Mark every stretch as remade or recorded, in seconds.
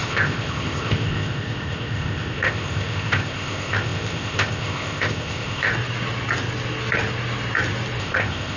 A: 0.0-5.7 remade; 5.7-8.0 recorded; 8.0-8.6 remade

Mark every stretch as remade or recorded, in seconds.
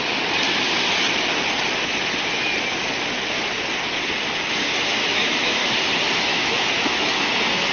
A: 0.0-5.1 recorded; 5.1-5.7 remade; 5.7-6.3 recorded; 6.3-7.3 remade; 7.3-7.7 recorded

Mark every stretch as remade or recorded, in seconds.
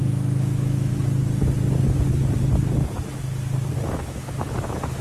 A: 0.0-0.9 remade; 0.9-3.9 recorded; 3.9-5.0 remade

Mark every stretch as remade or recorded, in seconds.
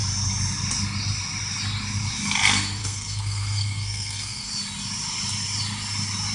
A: 0.0-2.8 recorded; 2.8-4.5 remade; 4.5-6.3 recorded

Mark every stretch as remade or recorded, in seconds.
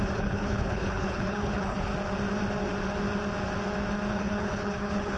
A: 0.0-1.9 remade; 1.9-4.1 recorded; 4.1-5.2 remade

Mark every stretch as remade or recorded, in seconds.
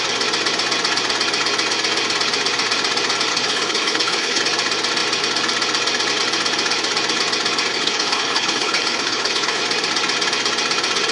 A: 0.0-3.3 recorded; 3.3-4.4 remade; 4.4-7.7 recorded; 7.7-9.6 remade; 9.6-11.1 recorded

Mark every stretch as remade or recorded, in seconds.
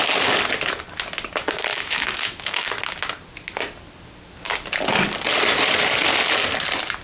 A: 0.0-1.7 recorded; 1.7-2.7 remade; 2.7-7.0 recorded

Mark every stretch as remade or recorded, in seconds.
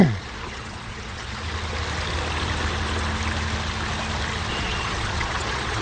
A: 0.0-1.4 remade; 1.4-4.5 recorded; 4.5-5.8 remade